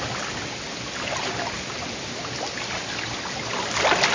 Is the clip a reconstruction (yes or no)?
no